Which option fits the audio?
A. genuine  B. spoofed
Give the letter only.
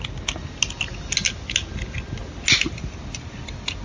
A